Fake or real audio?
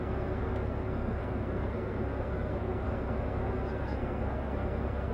fake